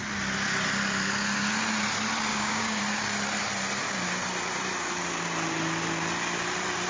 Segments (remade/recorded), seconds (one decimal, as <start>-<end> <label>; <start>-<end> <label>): 0.0-2.3 recorded; 2.3-2.8 remade; 2.8-6.9 recorded